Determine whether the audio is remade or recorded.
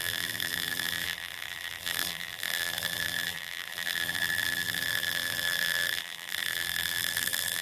remade